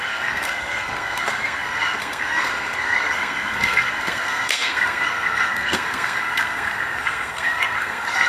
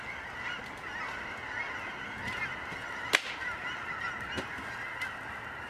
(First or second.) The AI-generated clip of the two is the first